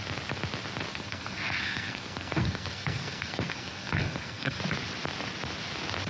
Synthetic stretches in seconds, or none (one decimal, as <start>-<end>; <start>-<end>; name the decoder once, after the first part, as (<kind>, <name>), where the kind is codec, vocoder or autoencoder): 0.9-4.6 (codec, SNAC)